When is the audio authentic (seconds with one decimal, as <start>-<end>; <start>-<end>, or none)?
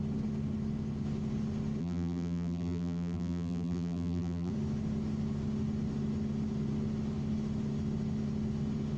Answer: 0.0-1.8; 4.5-9.0